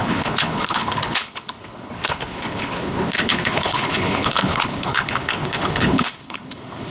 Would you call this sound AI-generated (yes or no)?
yes